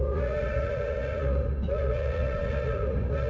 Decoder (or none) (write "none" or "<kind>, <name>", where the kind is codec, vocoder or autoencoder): vocoder, Vocos